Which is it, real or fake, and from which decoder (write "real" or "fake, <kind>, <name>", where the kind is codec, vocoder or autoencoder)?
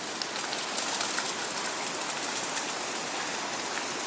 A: real